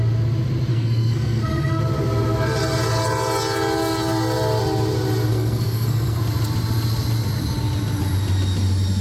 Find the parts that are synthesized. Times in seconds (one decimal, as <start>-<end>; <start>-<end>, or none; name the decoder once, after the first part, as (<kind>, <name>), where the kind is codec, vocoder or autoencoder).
0.7-1.8 (codec, SNAC); 5.3-6.2